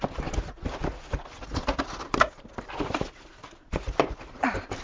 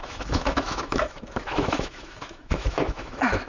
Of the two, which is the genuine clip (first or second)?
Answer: first